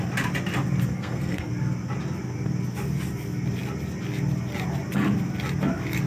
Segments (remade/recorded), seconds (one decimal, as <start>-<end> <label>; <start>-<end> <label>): 0.0-0.9 recorded; 0.9-1.5 remade; 1.5-6.1 recorded